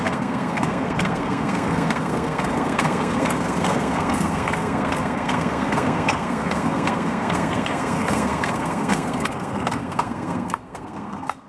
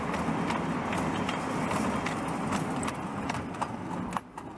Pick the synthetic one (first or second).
first